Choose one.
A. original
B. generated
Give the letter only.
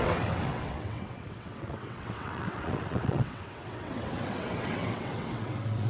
B